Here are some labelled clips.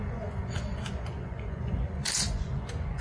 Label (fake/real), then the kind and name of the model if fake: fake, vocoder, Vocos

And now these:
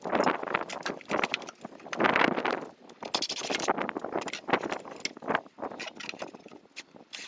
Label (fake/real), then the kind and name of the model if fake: real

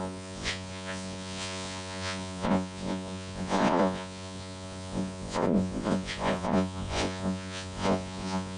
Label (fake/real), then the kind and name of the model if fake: fake, vocoder, Vocos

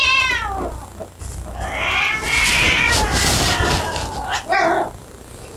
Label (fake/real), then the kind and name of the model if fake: real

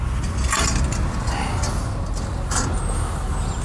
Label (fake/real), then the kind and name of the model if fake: real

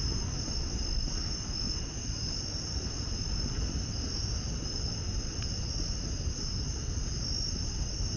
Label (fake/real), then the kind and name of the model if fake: real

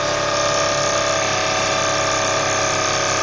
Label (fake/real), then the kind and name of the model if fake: real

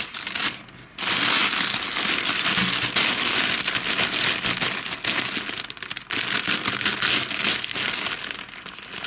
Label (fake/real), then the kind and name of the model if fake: real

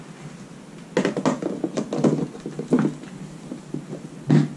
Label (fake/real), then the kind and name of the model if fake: real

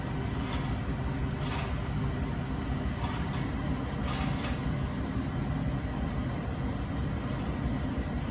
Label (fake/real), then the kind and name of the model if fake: real